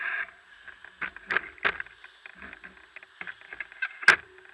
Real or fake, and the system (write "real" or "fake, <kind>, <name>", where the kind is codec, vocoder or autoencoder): real